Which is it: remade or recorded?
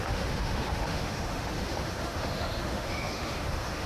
remade